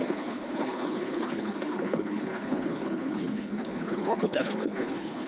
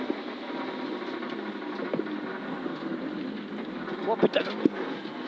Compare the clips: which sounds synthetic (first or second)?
first